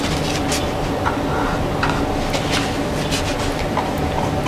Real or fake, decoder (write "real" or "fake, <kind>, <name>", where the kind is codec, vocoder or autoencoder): real